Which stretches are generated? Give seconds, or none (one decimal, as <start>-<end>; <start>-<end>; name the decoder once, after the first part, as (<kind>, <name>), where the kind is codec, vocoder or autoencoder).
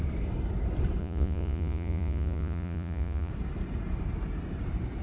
1.0-3.3 (vocoder, Vocos)